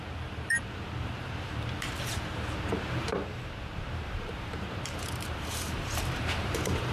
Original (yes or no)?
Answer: no